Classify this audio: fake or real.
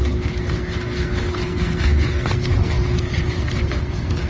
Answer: fake